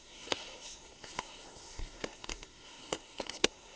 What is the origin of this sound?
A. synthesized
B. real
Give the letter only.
A